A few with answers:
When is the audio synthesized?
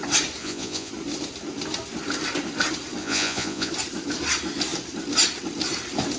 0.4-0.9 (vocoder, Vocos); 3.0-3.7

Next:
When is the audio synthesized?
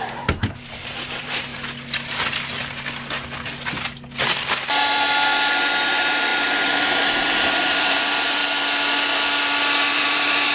0.0-1.5 (vocoder, BigVGAN v2); 5.8-8.4; 9.9-10.5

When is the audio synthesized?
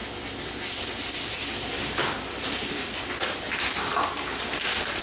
none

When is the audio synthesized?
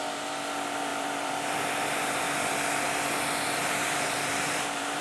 0.9-2.5 (vocoder, BigVGAN v2); 3.6-5.0